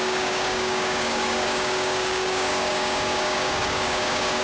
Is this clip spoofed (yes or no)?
yes